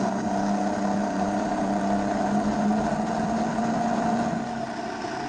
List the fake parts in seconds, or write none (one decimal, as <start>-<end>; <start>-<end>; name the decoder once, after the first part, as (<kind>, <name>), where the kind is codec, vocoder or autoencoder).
1.0-1.8 (vocoder, BigVGAN v2)